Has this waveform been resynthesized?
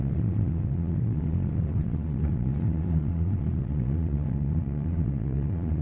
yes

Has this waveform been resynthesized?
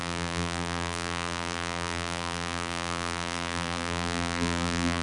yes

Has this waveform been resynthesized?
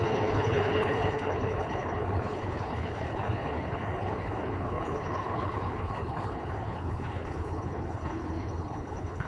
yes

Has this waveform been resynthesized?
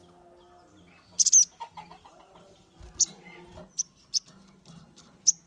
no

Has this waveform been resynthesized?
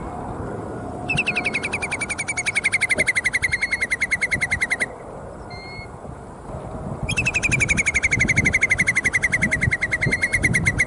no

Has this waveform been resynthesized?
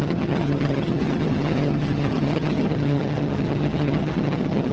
yes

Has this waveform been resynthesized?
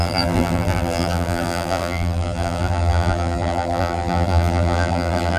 yes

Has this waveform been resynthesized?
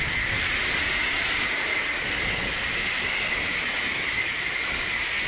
no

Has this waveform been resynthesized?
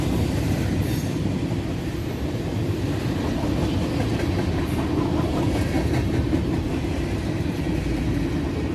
no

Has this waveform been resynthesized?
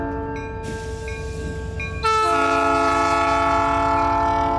no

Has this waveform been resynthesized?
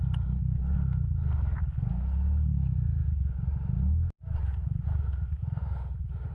no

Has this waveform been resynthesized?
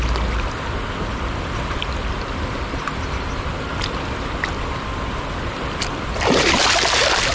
no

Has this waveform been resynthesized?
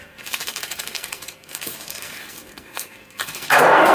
yes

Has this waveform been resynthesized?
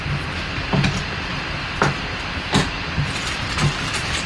no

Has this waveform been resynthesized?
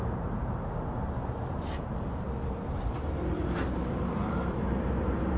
yes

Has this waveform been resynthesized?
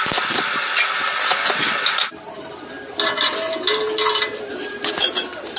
no